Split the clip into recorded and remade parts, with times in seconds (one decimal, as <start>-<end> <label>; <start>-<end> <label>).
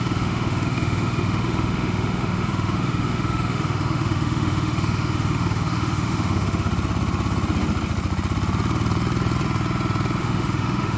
0.0-6.7 remade; 6.7-10.2 recorded; 10.2-11.0 remade